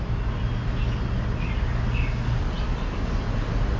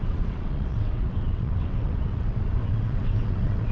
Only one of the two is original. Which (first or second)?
first